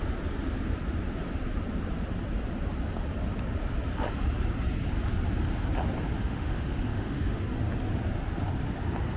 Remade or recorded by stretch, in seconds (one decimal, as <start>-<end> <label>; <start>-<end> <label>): 0.0-6.2 recorded; 6.2-7.4 remade; 7.4-9.2 recorded